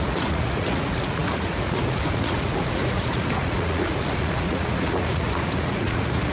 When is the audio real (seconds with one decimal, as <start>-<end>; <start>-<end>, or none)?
none